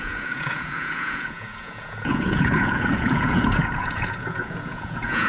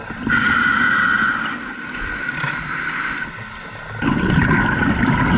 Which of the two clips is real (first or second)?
second